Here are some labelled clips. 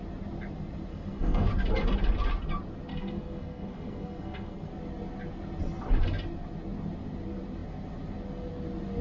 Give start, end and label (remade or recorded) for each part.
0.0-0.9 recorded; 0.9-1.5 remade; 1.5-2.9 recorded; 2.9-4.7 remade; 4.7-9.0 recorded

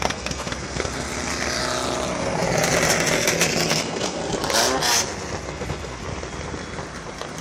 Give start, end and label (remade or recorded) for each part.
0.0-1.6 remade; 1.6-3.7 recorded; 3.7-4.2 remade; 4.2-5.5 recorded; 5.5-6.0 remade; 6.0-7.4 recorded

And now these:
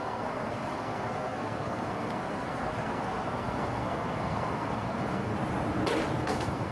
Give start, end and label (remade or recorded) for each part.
0.0-5.3 remade; 5.3-6.2 recorded; 6.2-6.7 remade

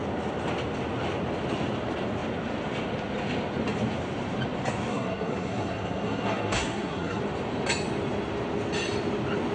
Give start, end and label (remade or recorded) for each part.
0.0-4.9 recorded; 4.9-7.2 remade; 7.2-9.5 recorded

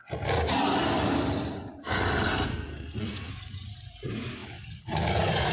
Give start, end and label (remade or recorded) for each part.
0.0-2.5 recorded; 2.5-3.3 remade; 3.3-5.5 recorded

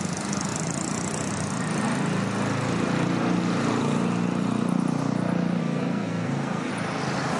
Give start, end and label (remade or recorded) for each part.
0.0-5.6 recorded; 5.6-6.7 remade; 6.7-7.4 recorded

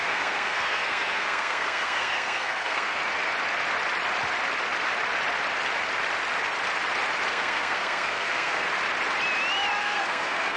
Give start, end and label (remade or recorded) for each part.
0.0-3.0 remade; 3.0-7.3 recorded; 7.3-8.7 remade; 8.7-9.8 recorded; 9.8-10.6 remade